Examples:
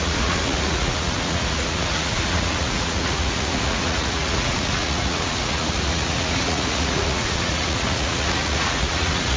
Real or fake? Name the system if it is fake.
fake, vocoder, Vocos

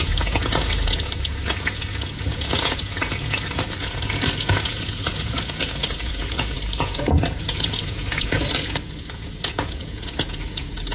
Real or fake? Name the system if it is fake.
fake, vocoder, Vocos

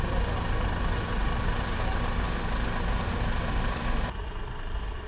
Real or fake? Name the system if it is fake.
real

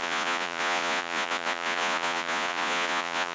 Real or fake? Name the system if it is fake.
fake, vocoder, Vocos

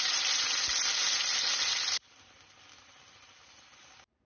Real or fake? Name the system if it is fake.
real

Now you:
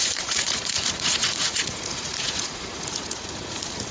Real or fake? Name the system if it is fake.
fake, vocoder, Vocos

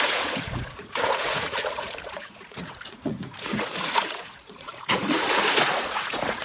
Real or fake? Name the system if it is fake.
fake, vocoder, Vocos